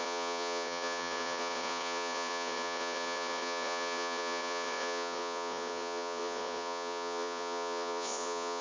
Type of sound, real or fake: fake